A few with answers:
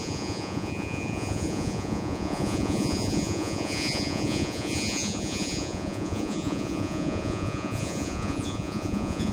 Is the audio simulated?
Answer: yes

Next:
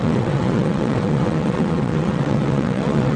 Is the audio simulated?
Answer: yes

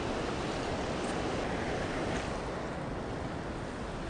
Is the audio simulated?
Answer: no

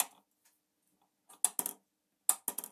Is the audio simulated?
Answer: no